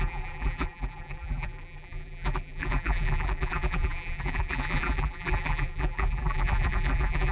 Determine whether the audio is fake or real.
fake